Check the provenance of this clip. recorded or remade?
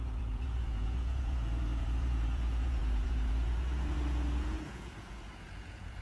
remade